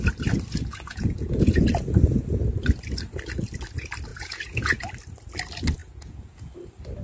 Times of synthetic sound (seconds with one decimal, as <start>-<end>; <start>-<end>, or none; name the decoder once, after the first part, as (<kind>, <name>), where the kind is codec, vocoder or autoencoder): 0.7-1.7 (vocoder, Vocos); 4.1-4.8; 5.8-6.5